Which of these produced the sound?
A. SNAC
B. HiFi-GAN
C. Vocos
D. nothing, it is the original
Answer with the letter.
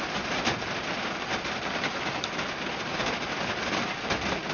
D